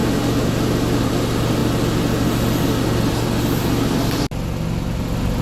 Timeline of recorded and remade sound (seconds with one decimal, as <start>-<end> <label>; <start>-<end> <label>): 0.0-5.4 recorded

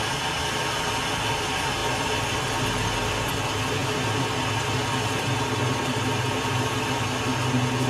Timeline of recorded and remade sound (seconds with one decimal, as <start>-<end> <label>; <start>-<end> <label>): 0.0-7.9 recorded

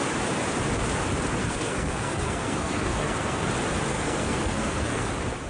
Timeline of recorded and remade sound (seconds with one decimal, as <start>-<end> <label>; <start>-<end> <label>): 0.0-1.4 recorded; 1.4-3.5 remade; 3.5-3.9 recorded; 3.9-5.1 remade; 5.1-5.5 recorded

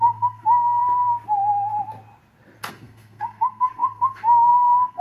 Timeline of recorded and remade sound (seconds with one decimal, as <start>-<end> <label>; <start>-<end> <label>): 0.0-0.8 remade; 0.8-2.7 recorded; 2.7-5.0 remade

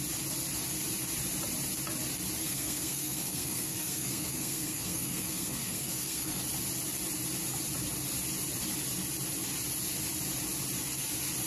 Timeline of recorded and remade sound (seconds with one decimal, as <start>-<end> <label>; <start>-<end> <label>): 0.0-2.4 recorded; 2.4-6.4 remade; 6.4-11.5 recorded

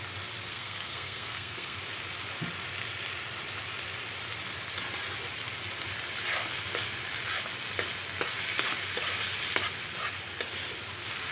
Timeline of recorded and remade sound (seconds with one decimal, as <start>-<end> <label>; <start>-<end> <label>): 0.0-0.5 recorded; 0.5-1.8 remade; 1.8-11.3 recorded

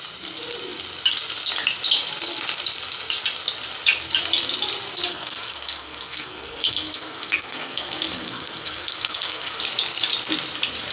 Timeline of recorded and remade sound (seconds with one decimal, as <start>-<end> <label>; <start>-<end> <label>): 0.0-5.1 recorded; 5.1-9.6 remade; 9.6-10.9 recorded

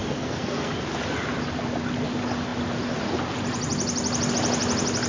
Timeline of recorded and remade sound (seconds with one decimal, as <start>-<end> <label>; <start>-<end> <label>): 0.0-0.7 remade; 0.7-5.1 recorded